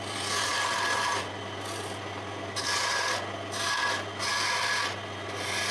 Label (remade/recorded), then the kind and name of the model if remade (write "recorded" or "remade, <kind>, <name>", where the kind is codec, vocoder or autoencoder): recorded